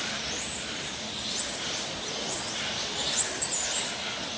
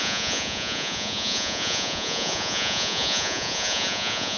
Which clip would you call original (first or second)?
first